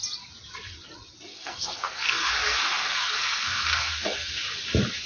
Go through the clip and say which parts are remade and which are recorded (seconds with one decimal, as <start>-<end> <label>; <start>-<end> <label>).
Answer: 0.0-1.3 recorded; 1.3-4.4 remade; 4.4-5.1 recorded

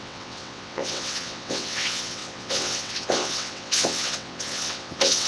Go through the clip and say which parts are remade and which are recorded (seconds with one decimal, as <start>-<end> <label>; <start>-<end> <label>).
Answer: 0.0-5.3 remade

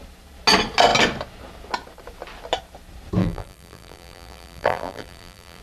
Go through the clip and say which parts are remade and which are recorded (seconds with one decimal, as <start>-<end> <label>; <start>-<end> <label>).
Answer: 0.0-3.2 recorded; 3.2-5.6 remade

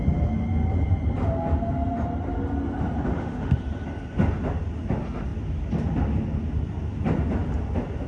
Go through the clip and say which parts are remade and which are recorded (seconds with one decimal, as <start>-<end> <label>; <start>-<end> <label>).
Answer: 0.0-3.1 recorded; 3.1-3.6 remade; 3.6-8.1 recorded

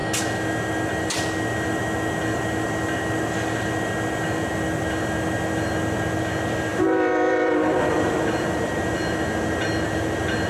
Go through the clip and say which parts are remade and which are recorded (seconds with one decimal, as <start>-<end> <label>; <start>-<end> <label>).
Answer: 0.0-6.7 recorded; 6.7-9.1 remade; 9.1-10.5 recorded

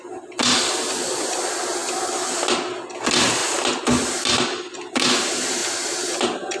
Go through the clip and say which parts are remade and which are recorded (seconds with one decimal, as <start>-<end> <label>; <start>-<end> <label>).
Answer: 0.0-6.6 recorded

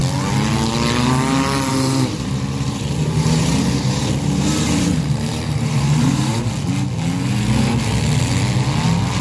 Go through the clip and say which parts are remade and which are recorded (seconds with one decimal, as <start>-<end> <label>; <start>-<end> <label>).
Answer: 0.0-1.7 recorded; 1.7-6.4 remade; 6.4-9.2 recorded